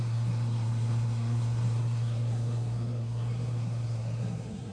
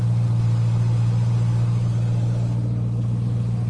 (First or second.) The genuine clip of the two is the second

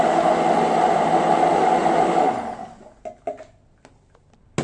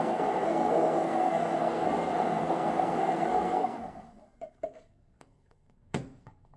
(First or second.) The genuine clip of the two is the first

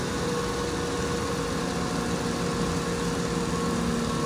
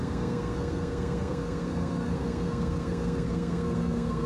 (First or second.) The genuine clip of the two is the first